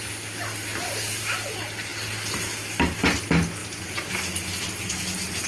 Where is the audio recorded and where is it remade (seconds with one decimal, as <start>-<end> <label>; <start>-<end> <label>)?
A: 0.0-5.5 recorded

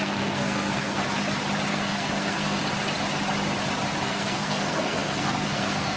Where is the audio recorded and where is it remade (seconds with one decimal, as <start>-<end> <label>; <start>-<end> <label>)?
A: 0.0-1.0 remade; 1.0-1.7 recorded; 1.7-2.6 remade; 2.6-4.0 recorded; 4.0-6.0 remade